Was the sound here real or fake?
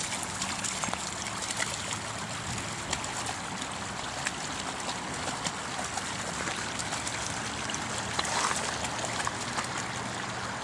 real